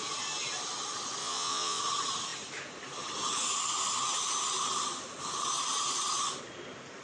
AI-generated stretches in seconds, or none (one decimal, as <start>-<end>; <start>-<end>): 1.2-1.8